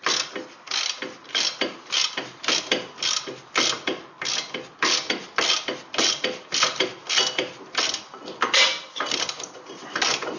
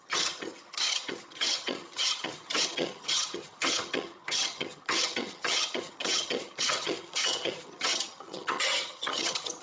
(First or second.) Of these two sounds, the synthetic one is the second